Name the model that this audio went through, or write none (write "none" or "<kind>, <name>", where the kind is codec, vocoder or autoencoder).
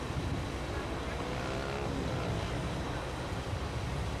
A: none